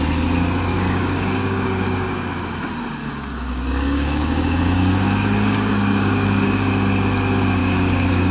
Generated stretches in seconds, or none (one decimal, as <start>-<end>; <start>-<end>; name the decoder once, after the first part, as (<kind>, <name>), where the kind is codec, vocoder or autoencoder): 0.7-2.4 (codec, DAC); 3.0-6.7; 7.6-8.3